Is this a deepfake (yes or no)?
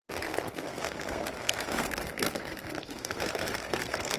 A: yes